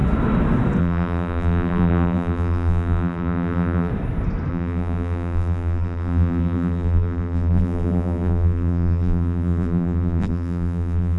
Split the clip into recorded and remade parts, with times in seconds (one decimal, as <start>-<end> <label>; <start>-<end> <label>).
0.0-0.8 recorded; 0.8-3.9 remade; 3.9-4.5 recorded; 4.5-11.2 remade